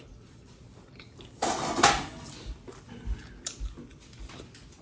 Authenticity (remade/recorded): recorded